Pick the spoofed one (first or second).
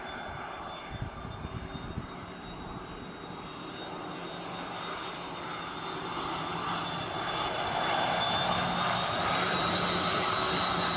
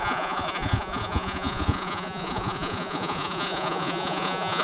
second